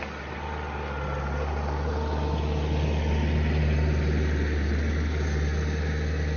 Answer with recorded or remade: recorded